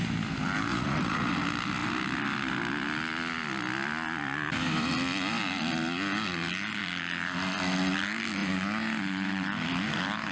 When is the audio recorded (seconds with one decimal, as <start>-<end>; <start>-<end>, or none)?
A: 0.0-0.7; 1.3-10.3